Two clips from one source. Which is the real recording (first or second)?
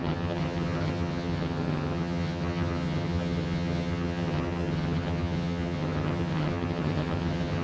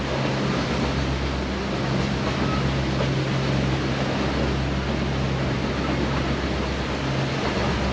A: second